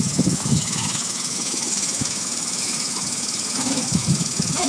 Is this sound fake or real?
fake